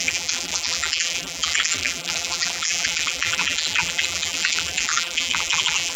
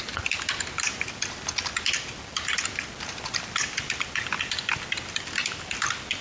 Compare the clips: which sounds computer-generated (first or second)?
first